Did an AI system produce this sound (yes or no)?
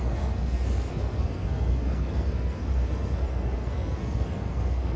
yes